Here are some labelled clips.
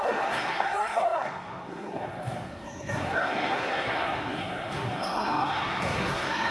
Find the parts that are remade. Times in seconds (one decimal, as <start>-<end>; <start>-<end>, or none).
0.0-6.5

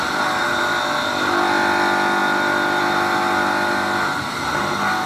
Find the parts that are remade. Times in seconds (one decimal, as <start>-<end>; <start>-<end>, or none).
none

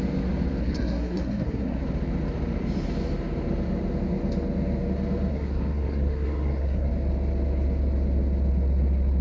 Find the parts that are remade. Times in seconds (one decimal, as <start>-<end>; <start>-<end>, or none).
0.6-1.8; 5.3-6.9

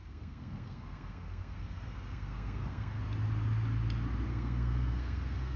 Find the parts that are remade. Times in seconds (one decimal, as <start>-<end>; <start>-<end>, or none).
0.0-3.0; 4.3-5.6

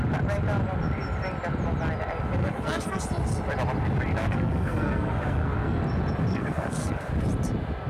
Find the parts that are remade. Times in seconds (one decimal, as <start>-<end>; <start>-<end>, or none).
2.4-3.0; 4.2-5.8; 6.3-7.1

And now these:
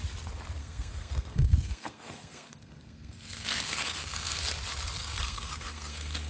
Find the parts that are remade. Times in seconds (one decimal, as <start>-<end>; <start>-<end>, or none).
0.6-4.4; 5.0-6.3

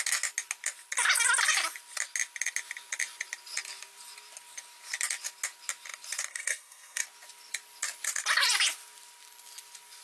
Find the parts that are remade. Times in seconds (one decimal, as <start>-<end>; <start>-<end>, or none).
6.3-7.0

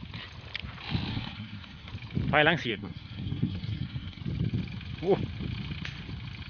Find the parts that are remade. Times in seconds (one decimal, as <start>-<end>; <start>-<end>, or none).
1.1-1.9; 2.7-4.2